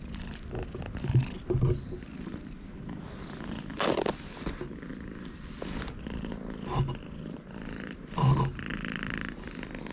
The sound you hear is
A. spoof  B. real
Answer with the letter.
B